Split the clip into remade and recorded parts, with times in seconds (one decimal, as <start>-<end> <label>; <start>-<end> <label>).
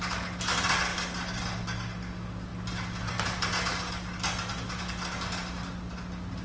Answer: 0.0-6.4 recorded